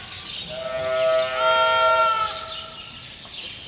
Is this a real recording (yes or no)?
yes